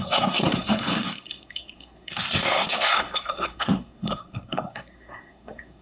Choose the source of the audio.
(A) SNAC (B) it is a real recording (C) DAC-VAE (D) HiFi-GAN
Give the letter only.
A